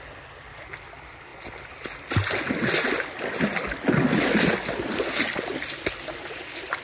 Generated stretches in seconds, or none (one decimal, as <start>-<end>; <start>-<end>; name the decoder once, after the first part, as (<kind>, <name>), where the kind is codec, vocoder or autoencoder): none

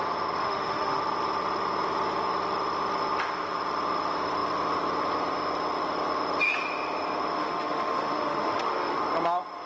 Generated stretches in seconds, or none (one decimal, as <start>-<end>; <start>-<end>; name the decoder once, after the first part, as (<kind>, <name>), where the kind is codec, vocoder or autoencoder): 0.4-1.0 (autoencoder, DAC-VAE); 7.4-9.0

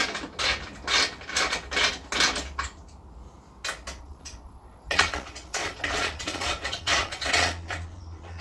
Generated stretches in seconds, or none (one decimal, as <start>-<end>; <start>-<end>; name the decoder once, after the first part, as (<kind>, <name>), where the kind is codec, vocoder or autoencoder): 4.0-8.4 (vocoder, Vocos)

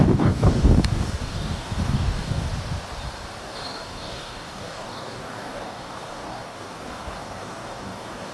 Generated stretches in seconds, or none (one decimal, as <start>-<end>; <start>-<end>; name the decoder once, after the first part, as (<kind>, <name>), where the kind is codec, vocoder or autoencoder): 0.0-2.5 (codec, DAC); 3.4-8.3

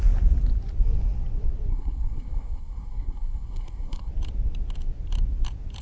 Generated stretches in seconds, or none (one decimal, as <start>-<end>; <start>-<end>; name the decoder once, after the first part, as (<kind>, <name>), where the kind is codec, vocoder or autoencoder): 1.7-4.1 (codec, SNAC)

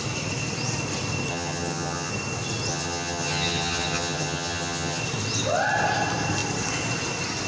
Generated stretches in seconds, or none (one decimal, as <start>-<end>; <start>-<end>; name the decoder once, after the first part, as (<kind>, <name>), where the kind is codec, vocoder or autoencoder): 1.3-2.1 (vocoder, HiFi-GAN); 2.7-5.0

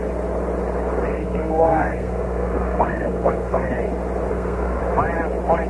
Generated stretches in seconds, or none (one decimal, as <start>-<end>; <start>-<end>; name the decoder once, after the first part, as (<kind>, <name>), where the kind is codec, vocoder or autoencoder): 1.1-3.7 (codec, SNAC); 4.3-4.8

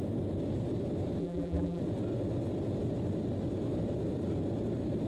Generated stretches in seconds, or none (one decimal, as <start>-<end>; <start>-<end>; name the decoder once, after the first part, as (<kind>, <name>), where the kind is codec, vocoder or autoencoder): 1.2-1.8 (vocoder, BigVGAN v2)